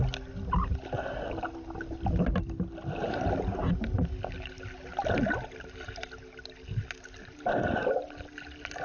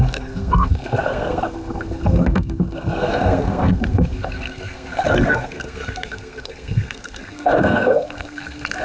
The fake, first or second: second